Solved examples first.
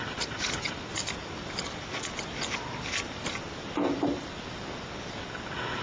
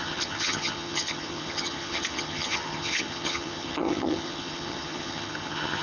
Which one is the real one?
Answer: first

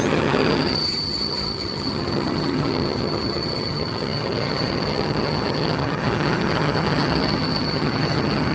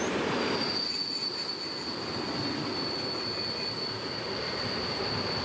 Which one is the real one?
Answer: second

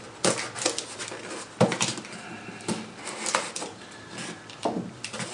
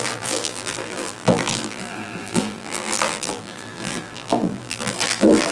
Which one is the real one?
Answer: first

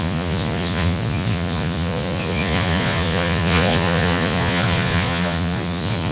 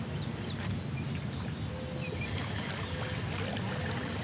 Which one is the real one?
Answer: second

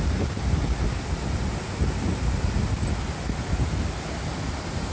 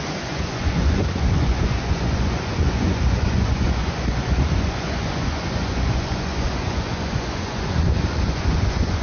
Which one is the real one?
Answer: first